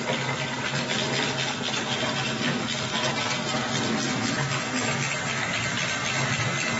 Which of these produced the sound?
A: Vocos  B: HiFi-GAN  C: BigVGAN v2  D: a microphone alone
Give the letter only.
D